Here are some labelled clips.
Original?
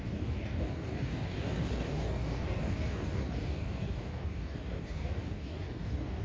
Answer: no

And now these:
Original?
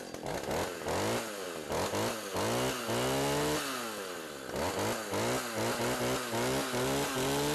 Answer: yes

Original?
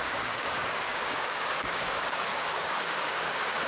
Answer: no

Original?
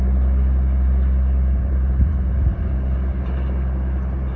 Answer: yes